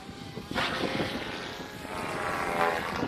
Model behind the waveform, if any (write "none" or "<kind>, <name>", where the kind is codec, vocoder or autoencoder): vocoder, BigVGAN v2